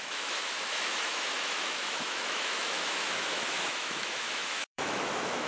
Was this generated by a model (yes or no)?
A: yes